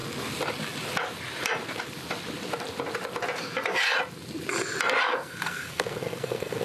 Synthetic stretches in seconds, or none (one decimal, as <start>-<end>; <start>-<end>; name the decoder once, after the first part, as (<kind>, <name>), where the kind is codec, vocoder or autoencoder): 5.1-6.6 (codec, SNAC)